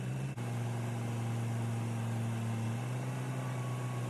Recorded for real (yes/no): yes